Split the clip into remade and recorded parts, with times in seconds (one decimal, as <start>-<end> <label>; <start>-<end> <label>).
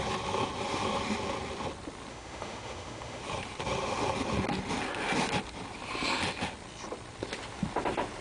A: 0.0-2.1 recorded; 2.1-3.2 remade; 3.2-8.2 recorded